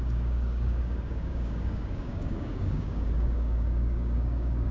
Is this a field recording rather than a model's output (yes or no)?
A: no